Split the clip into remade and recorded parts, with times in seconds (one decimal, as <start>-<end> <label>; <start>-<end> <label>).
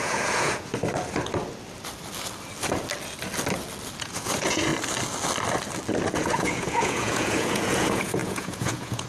0.0-0.7 remade; 0.7-4.0 recorded; 4.0-4.7 remade; 4.7-6.1 recorded; 6.1-9.1 remade